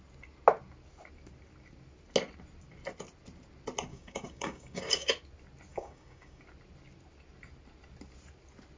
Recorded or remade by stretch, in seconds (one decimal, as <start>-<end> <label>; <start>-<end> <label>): 0.0-3.9 recorded; 3.9-5.1 remade; 5.1-5.7 recorded; 5.7-6.4 remade; 6.4-8.8 recorded